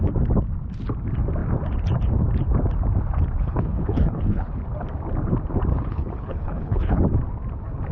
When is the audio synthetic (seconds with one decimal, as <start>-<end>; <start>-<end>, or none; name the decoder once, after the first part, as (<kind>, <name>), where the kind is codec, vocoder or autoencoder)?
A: 3.4-4.6 (codec, HILCodec); 5.7-7.0